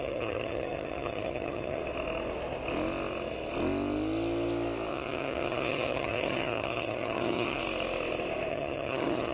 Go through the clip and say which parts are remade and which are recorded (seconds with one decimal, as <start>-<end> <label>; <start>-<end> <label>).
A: 0.0-1.8 remade; 1.8-4.9 recorded; 4.9-7.6 remade; 7.6-8.5 recorded; 8.5-9.3 remade